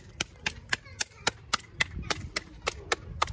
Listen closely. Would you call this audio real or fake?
real